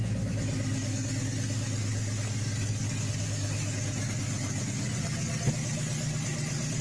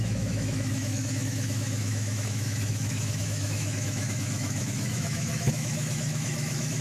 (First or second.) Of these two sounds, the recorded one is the first